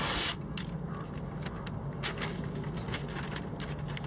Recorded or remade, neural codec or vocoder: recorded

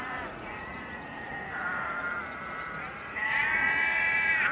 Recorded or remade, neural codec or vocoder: remade, vocoder, Vocos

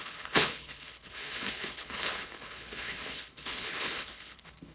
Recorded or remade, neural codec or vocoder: remade, codec, HILCodec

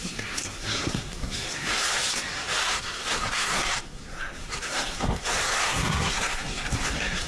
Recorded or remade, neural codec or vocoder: remade, codec, SNAC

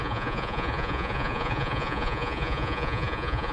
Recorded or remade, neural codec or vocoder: remade, vocoder, Vocos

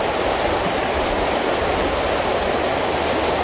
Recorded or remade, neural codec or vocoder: recorded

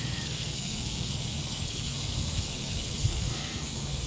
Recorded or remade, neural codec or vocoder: remade, codec, SNAC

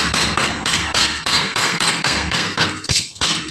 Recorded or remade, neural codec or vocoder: remade, codec, SNAC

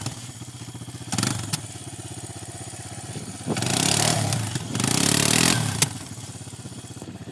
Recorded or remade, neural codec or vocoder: recorded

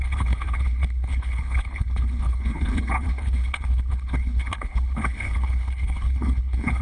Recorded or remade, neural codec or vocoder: remade, codec, HILCodec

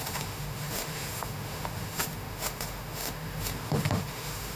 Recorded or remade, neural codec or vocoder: remade, autoencoder, DAC-VAE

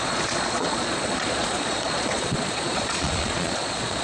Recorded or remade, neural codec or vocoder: remade, vocoder, Vocos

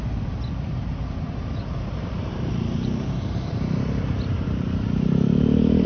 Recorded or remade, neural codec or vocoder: remade, vocoder, BigVGAN v2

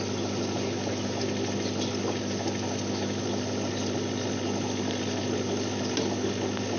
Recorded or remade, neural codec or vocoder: recorded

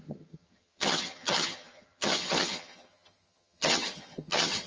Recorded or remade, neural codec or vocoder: remade, vocoder, HiFi-GAN